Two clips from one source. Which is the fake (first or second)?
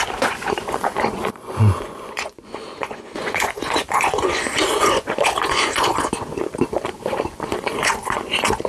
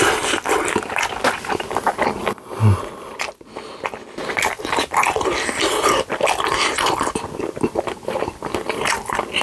first